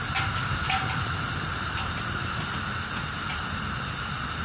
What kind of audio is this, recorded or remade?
recorded